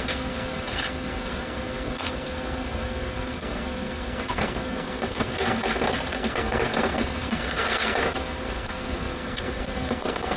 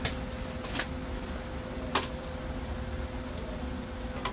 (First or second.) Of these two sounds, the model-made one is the first